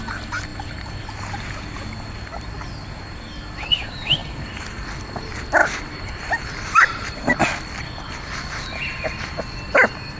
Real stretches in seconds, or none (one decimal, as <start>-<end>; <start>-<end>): 0.0-0.5; 1.0-4.2; 4.8-5.6; 8.9-10.2